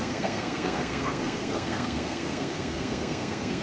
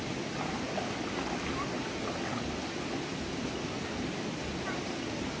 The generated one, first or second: first